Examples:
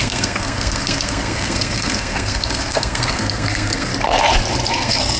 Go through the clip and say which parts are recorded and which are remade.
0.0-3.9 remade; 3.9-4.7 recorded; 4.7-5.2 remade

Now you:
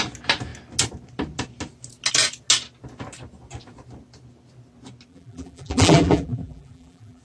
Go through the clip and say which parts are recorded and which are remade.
0.0-5.1 recorded; 5.1-7.2 remade

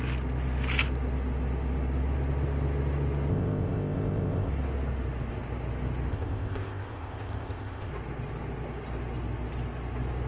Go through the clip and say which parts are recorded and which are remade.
0.0-3.3 recorded; 3.3-4.5 remade; 4.5-6.1 recorded; 6.1-7.9 remade; 7.9-10.3 recorded